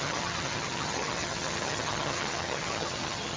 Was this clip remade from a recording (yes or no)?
yes